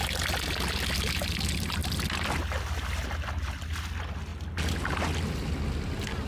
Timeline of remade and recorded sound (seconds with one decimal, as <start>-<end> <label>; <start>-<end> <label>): 0.0-6.3 recorded